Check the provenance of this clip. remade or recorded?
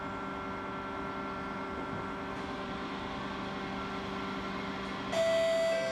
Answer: recorded